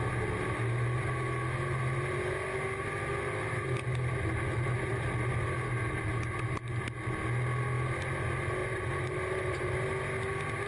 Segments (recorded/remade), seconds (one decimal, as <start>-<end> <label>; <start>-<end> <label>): 0.0-8.6 recorded; 8.6-9.7 remade; 9.7-10.7 recorded